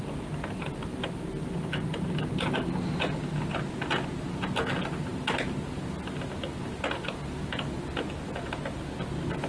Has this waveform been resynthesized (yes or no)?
no